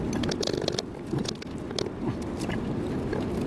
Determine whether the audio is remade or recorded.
recorded